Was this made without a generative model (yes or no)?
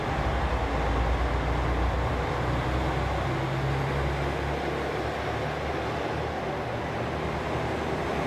yes